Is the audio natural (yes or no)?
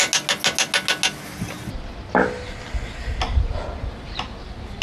yes